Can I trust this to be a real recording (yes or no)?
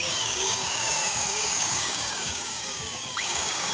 no